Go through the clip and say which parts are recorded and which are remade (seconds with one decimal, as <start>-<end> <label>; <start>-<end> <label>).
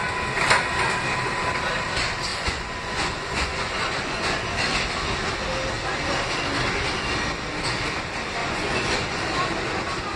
0.0-2.3 recorded; 2.3-4.4 remade; 4.4-8.4 recorded; 8.4-9.2 remade; 9.2-10.2 recorded